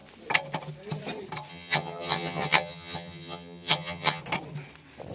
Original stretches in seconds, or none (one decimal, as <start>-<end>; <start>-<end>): 0.0-1.5; 4.2-5.1